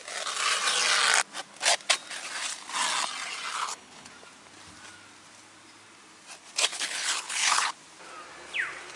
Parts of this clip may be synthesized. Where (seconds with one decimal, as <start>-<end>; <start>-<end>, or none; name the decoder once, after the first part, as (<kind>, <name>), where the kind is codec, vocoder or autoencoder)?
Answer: 3.5-4.1 (codec, HILCodec); 6.7-7.7